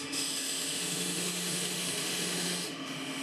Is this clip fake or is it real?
fake